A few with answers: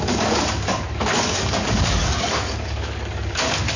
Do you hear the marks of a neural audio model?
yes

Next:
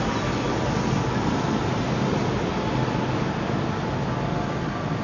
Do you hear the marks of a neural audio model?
no